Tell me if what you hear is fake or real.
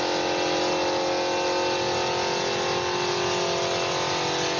real